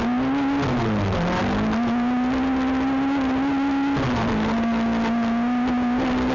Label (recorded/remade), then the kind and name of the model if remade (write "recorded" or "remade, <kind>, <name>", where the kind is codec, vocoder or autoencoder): recorded